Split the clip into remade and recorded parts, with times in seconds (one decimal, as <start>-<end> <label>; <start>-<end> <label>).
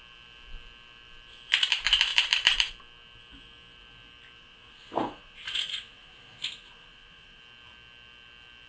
0.0-4.4 recorded; 4.4-7.4 remade; 7.4-8.7 recorded